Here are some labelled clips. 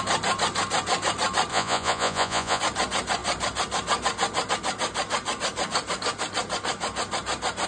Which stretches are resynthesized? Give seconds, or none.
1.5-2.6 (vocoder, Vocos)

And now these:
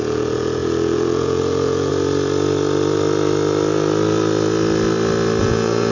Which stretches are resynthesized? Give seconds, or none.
0.0-1.9 (vocoder, Vocos); 5.4-5.9

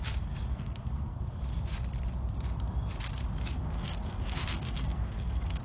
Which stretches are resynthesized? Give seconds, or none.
0.5-1.3 (codec, SNAC); 3.5-5.6